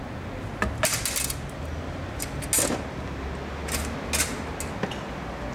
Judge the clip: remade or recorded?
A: recorded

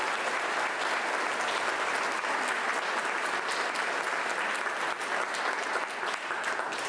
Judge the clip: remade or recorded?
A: recorded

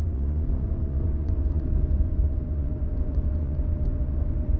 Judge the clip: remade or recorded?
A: remade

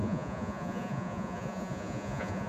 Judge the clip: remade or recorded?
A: remade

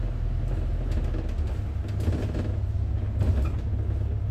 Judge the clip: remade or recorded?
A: recorded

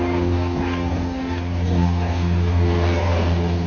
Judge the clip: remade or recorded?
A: remade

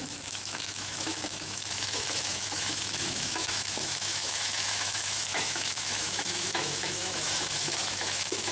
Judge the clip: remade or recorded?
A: remade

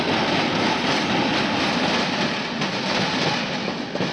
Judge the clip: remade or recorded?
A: recorded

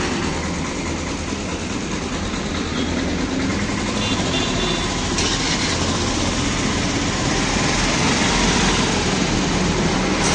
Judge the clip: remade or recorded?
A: recorded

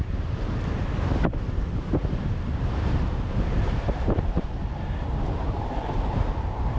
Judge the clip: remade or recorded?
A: remade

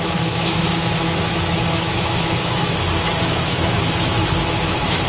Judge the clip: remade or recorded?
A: remade